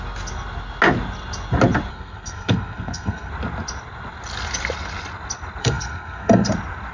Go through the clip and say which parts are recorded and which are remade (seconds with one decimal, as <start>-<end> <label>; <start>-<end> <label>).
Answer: 0.0-1.9 recorded; 1.9-3.3 remade; 3.3-5.6 recorded; 5.6-6.5 remade; 6.5-6.9 recorded